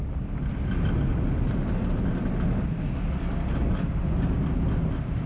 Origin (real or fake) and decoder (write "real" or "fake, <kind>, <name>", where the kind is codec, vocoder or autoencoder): real